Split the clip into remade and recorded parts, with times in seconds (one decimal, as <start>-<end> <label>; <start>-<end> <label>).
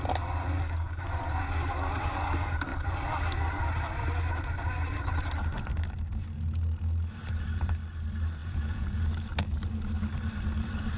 0.0-8.4 recorded; 8.4-9.0 remade; 9.0-11.0 recorded